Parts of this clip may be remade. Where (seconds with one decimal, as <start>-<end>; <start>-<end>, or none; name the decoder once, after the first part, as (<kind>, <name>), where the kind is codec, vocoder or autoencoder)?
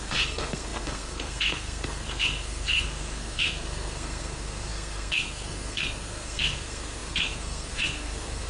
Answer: 0.0-8.5 (codec, SNAC)